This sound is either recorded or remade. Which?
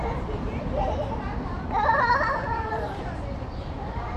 remade